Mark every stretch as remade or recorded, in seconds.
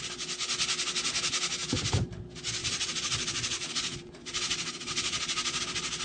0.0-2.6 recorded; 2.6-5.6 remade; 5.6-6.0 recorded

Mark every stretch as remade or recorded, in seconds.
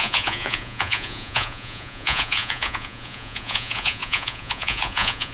0.0-5.3 remade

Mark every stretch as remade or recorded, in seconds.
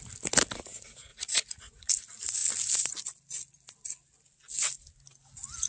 0.0-1.1 recorded; 1.1-1.9 remade; 1.9-5.7 recorded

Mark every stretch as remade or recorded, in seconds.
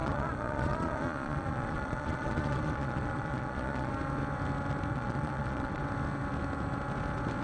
0.0-3.9 remade; 3.9-4.9 recorded; 4.9-5.8 remade; 5.8-7.4 recorded